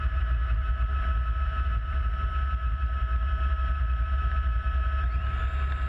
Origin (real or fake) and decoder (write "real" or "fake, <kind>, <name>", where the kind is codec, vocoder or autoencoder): real